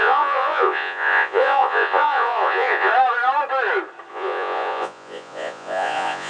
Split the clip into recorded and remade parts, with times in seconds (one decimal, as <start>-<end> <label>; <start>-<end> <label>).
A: 0.0-2.9 remade; 2.9-4.1 recorded; 4.1-6.3 remade